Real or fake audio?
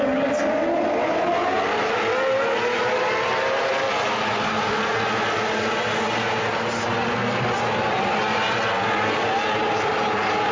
real